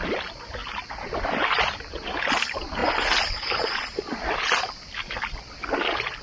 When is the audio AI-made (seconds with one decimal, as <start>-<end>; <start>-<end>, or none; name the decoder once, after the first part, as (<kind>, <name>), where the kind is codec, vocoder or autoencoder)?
none